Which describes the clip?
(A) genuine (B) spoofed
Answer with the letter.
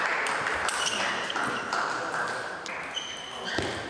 A